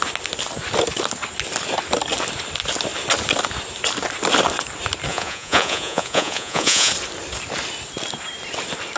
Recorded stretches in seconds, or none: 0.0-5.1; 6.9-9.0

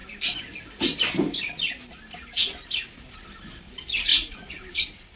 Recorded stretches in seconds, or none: 0.0-5.2